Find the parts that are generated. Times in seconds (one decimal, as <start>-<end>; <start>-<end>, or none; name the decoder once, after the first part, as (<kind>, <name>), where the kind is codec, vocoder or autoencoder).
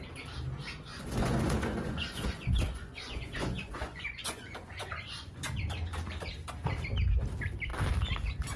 0.9-5.4 (vocoder, Vocos)